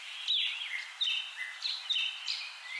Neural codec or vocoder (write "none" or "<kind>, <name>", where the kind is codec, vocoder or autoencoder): none